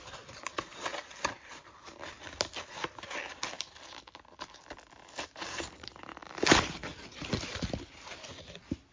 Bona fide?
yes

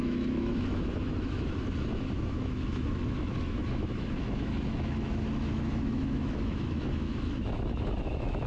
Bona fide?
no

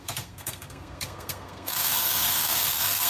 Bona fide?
no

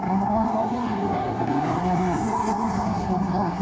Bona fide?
no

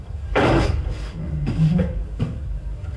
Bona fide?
no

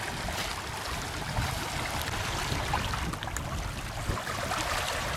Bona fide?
yes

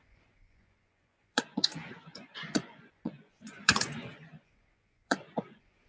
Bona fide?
no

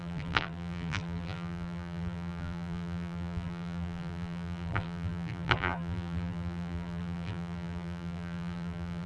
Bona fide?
no